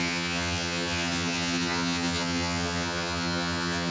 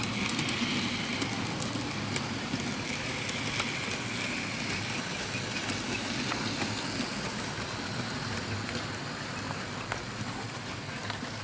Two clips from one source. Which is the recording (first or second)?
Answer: second